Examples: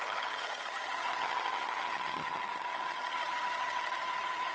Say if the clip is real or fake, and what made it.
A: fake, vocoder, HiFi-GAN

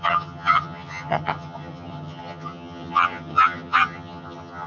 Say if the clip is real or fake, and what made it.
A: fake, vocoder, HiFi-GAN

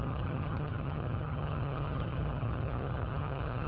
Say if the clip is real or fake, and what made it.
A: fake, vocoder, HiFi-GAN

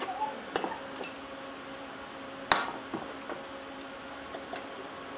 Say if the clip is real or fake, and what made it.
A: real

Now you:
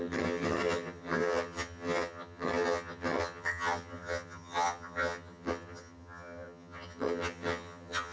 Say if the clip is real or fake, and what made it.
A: fake, vocoder, HiFi-GAN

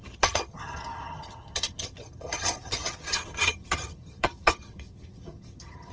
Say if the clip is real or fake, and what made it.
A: fake, vocoder, HiFi-GAN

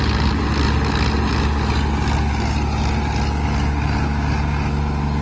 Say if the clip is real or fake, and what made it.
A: real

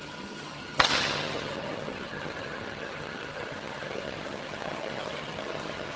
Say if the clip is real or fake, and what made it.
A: fake, vocoder, HiFi-GAN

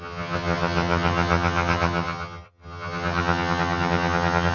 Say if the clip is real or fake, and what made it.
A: fake, vocoder, HiFi-GAN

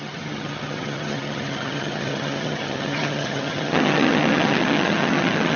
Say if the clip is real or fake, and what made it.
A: fake, vocoder, HiFi-GAN